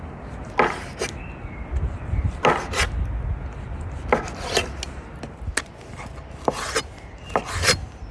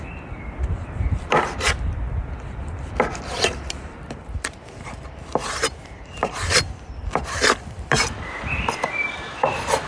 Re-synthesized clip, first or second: second